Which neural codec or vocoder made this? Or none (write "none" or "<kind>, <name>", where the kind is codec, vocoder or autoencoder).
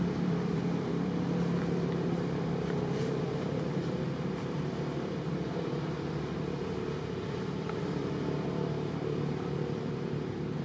vocoder, BigVGAN v2